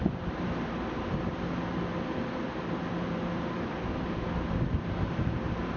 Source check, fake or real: real